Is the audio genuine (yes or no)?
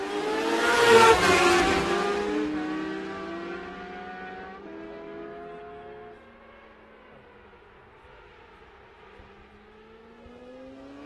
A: yes